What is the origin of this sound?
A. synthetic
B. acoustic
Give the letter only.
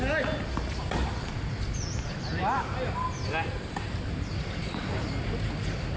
B